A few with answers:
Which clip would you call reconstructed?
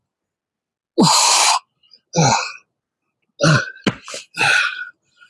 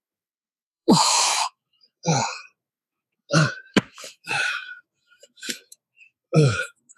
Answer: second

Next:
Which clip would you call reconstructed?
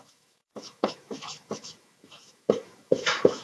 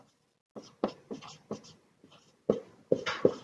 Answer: first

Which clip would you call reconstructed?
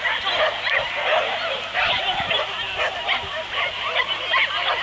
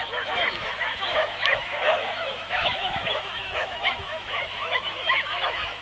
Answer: second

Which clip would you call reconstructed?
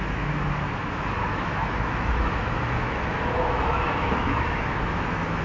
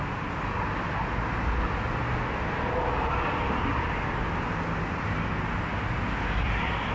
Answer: first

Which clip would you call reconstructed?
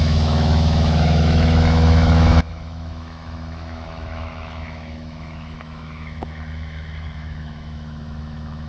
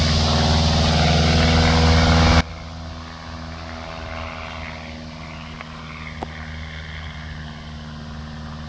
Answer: first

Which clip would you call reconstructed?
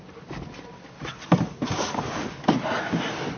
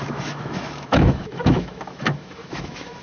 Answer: second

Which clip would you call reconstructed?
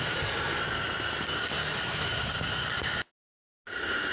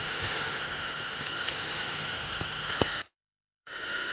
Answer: second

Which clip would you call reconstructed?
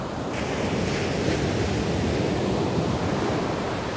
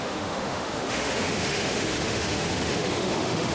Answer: second